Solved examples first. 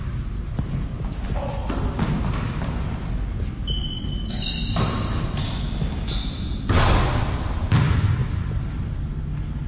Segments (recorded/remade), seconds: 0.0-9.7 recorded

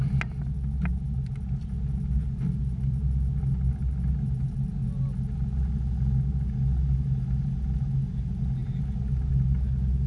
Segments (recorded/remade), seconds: 0.0-10.1 recorded

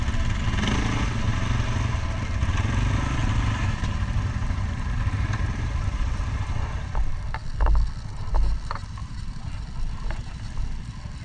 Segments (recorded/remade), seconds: 0.0-3.2 recorded; 3.2-6.5 remade; 6.5-9.0 recorded; 9.0-9.6 remade; 9.6-11.2 recorded

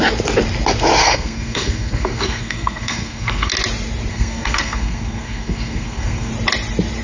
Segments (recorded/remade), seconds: 0.0-1.0 recorded; 1.0-3.5 remade; 3.5-4.1 recorded; 4.1-6.3 remade; 6.3-7.0 recorded

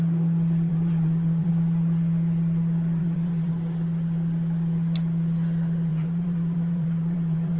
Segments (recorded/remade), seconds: 0.0-0.7 recorded; 0.7-1.5 remade; 1.5-3.0 recorded; 3.0-3.5 remade; 3.5-5.9 recorded; 5.9-7.6 remade

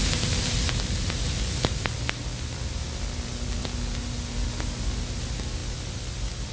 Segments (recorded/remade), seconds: 0.0-6.5 recorded

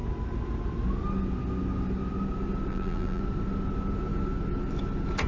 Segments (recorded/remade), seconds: 0.0-2.7 recorded; 2.7-3.2 remade; 3.2-5.3 recorded

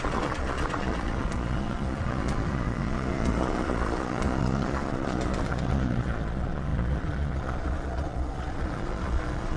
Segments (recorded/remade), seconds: 0.0-9.6 remade